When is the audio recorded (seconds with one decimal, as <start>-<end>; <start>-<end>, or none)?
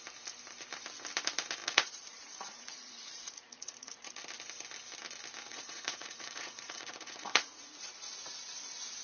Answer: 0.0-1.6; 4.2-5.5; 7.9-9.0